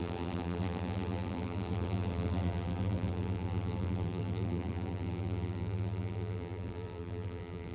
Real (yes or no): no